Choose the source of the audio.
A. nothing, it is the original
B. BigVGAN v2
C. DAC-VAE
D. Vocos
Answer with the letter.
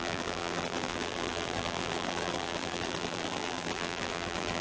B